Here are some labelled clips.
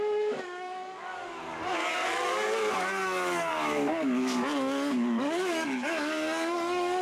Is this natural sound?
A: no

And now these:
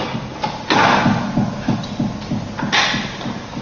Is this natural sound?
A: yes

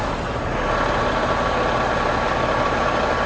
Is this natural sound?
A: yes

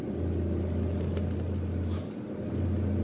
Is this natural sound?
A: yes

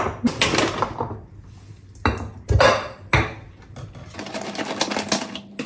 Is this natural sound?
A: yes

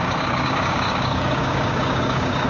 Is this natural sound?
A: no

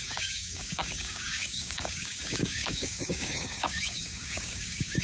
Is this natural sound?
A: no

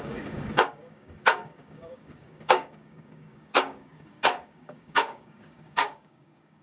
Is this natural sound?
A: no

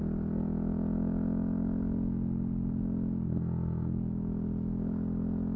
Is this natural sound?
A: yes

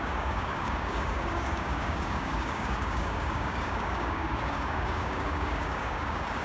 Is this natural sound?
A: no